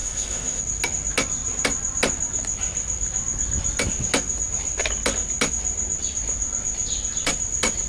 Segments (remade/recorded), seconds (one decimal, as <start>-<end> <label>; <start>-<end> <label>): 0.0-0.6 remade; 0.6-7.9 recorded

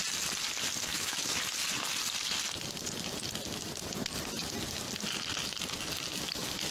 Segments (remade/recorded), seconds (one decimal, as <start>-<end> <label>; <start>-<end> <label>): 0.0-0.9 recorded; 0.9-1.4 remade; 1.4-6.7 recorded

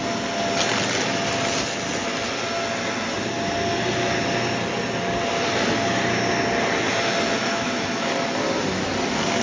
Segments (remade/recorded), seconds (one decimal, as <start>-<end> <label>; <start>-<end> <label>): 0.0-7.4 recorded; 7.4-8.1 remade; 8.1-9.4 recorded

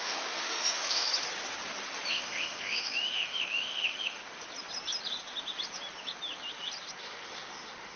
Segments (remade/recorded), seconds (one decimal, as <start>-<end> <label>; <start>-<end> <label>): 0.0-1.1 remade; 1.1-2.1 recorded; 2.1-4.2 remade; 4.2-7.0 recorded; 7.0-8.0 remade

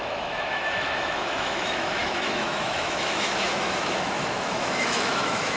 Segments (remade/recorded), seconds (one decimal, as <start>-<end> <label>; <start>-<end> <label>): 0.0-5.6 remade

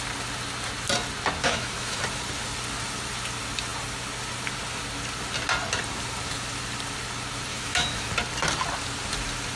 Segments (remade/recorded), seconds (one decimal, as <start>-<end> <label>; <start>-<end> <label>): 0.0-1.4 recorded; 1.4-2.0 remade; 2.0-7.5 recorded; 7.5-8.1 remade; 8.1-9.6 recorded

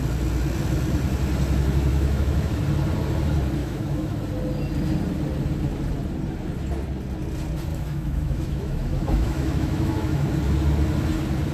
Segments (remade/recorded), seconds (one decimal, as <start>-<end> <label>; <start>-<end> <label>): 0.0-1.9 recorded; 1.9-2.6 remade; 2.6-3.6 recorded; 3.6-4.2 remade; 4.2-7.7 recorded; 7.7-10.3 remade; 10.3-11.5 recorded